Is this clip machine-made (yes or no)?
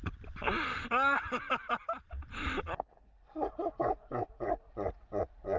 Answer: no